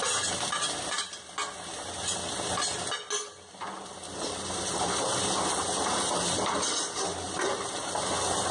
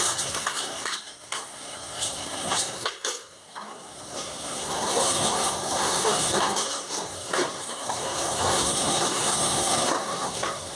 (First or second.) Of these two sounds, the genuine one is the first